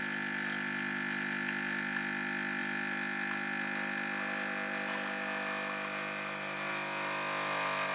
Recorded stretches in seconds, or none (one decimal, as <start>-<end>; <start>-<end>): 0.0-7.9